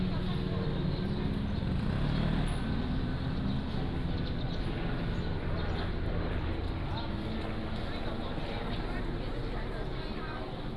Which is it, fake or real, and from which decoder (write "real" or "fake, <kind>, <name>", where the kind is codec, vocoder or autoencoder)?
real